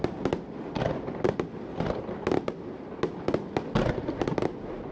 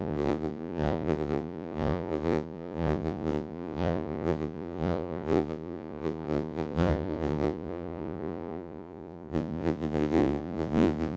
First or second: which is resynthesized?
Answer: second